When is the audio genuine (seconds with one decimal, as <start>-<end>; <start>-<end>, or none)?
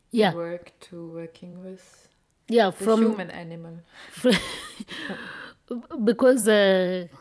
none